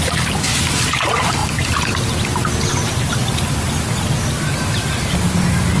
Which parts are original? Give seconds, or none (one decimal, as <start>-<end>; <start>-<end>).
0.0-5.8